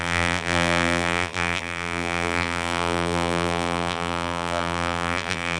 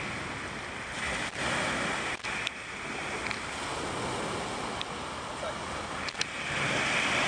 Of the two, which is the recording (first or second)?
second